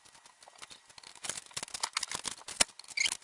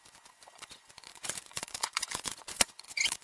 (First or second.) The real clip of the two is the first